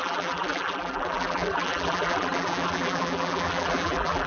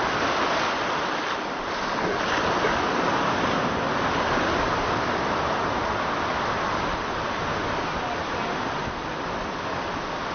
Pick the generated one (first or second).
first